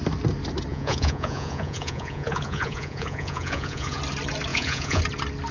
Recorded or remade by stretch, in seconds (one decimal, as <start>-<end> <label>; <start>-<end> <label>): 0.0-0.7 recorded; 0.7-4.0 remade; 4.0-4.5 recorded; 4.5-5.0 remade; 5.0-5.5 recorded